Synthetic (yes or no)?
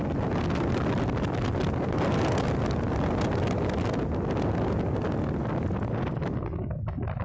no